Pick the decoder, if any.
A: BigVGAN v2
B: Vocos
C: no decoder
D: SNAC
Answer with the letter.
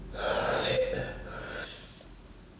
C